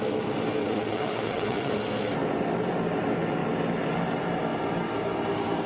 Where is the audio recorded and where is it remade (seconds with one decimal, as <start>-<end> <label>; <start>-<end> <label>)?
0.0-0.6 recorded; 0.6-1.7 remade; 1.7-5.7 recorded